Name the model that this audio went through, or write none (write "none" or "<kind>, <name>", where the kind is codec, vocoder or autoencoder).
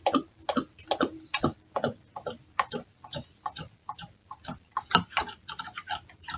none